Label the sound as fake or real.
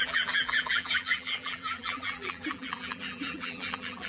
fake